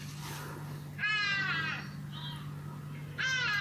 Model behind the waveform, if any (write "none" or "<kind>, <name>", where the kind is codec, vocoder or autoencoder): none